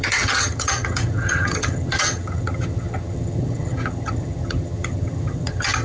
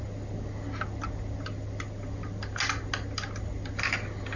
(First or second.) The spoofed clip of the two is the first